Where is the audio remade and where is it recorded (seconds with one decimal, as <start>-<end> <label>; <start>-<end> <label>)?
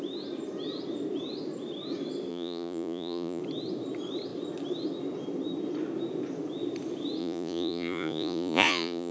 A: 0.0-2.3 recorded; 2.3-3.4 remade; 3.4-7.2 recorded; 7.2-9.1 remade